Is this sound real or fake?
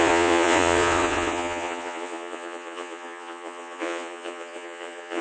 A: fake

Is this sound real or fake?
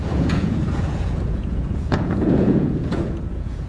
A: fake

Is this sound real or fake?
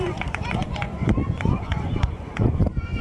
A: fake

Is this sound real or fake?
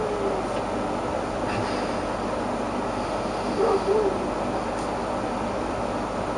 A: real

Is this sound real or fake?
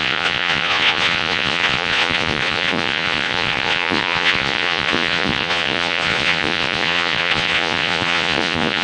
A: fake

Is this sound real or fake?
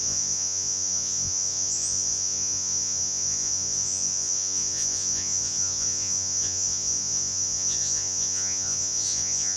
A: fake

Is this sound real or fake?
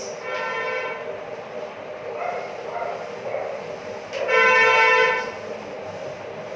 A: real